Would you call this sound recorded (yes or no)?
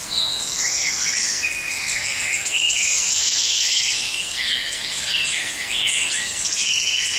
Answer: no